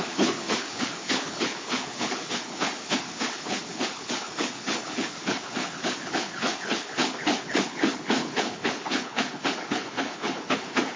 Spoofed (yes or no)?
yes